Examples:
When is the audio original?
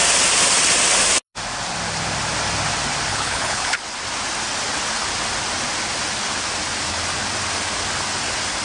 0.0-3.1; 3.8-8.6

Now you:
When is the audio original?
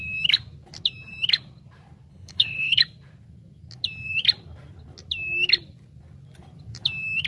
0.0-2.1; 2.8-7.3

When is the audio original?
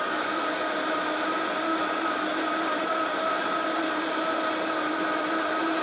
0.0-5.8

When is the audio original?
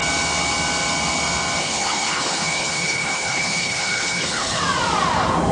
0.0-1.6; 4.6-5.5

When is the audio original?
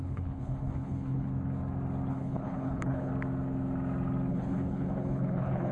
1.3-2.1; 3.1-4.3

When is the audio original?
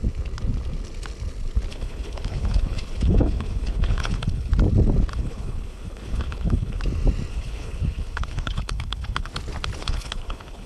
0.0-1.7; 4.5-5.1; 6.8-7.3; 9.3-9.8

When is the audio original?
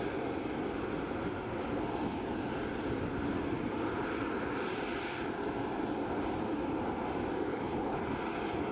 0.0-7.5; 8.1-8.7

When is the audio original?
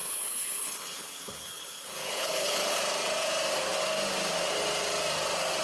2.8-5.6